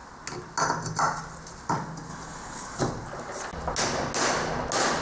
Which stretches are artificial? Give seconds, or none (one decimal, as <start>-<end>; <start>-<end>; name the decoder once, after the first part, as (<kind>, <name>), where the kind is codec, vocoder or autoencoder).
2.1-2.8 (codec, DAC)